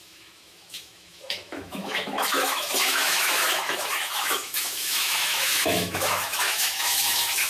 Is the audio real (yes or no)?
no